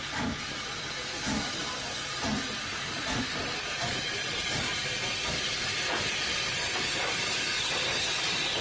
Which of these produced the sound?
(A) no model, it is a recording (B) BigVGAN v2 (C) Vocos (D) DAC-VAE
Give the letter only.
A